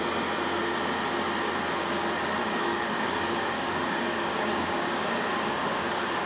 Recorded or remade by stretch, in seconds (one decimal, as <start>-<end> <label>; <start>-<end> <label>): 0.0-2.4 recorded; 2.4-6.3 remade